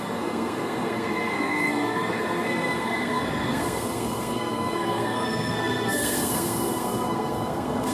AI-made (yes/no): yes